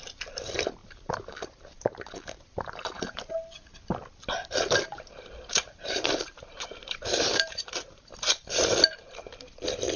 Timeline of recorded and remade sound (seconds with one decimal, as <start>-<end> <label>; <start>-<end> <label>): 0.0-0.8 recorded; 0.8-3.3 remade; 3.3-5.5 recorded; 5.5-8.1 remade; 8.1-10.0 recorded